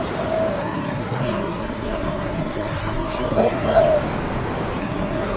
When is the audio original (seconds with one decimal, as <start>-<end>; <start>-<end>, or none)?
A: 0.0-0.6; 3.8-4.8